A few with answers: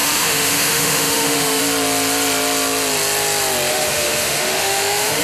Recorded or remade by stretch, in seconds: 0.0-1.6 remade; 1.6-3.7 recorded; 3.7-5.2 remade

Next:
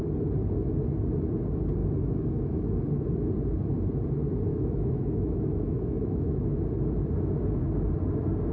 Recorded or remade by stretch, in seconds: 0.0-1.8 recorded; 1.8-2.6 remade; 2.6-4.5 recorded; 4.5-6.6 remade; 6.6-8.5 recorded

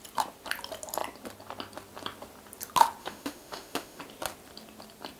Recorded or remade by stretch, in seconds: 0.0-3.0 recorded; 3.0-4.0 remade; 4.0-5.2 recorded

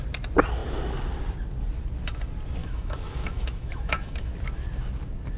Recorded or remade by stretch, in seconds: 0.0-2.6 recorded; 2.6-4.3 remade; 4.3-5.4 recorded

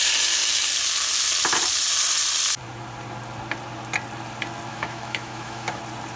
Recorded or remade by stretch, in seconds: 0.0-4.7 recorded; 4.7-5.8 remade; 5.8-6.2 recorded

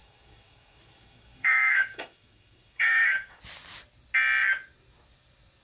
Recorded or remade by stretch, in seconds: 0.0-3.4 remade; 3.4-5.6 recorded

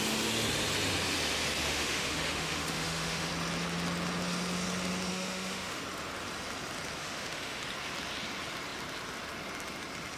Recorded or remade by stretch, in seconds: 0.0-1.7 recorded; 1.7-3.3 remade; 3.3-5.1 recorded; 5.1-5.8 remade; 5.8-7.0 recorded; 7.0-7.6 remade; 7.6-10.2 recorded

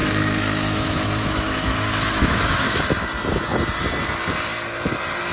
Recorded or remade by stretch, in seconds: 0.0-2.8 remade; 2.8-5.3 recorded